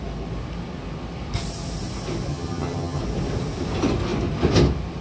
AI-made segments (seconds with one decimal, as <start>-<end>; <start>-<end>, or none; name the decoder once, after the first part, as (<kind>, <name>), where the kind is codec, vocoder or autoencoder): 2.3-3.0 (vocoder, HiFi-GAN)